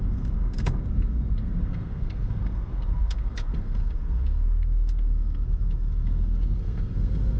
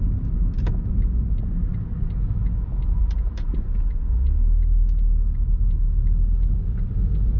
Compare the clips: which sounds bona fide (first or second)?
second